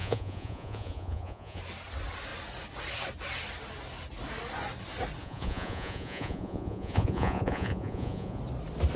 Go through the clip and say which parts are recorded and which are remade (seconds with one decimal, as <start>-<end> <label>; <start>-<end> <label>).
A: 0.0-1.6 remade; 1.6-5.2 recorded; 5.2-8.4 remade; 8.4-9.0 recorded

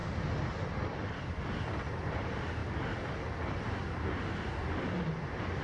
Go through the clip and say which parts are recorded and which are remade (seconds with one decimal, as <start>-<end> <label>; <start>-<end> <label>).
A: 0.0-5.6 recorded

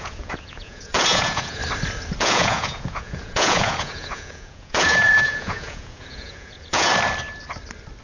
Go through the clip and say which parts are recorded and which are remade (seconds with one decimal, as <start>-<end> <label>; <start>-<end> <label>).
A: 0.0-1.6 remade; 1.6-2.2 recorded; 2.2-6.9 remade; 6.9-8.0 recorded

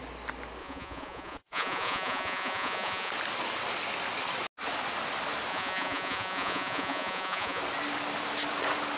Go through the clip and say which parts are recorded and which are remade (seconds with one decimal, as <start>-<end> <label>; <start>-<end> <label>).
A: 0.0-0.6 recorded; 0.6-3.1 remade; 3.1-5.5 recorded; 5.5-7.6 remade; 7.6-9.0 recorded

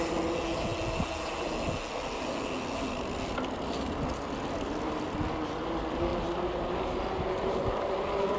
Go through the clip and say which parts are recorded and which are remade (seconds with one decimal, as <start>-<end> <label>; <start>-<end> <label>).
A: 0.0-8.4 recorded

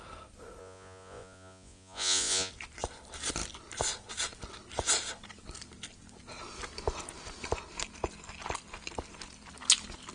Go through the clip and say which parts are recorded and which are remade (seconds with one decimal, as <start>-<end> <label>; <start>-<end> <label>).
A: 0.0-0.6 recorded; 0.6-2.5 remade; 2.5-10.1 recorded